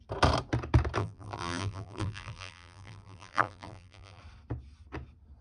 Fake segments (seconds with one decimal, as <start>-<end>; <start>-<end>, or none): 1.0-4.2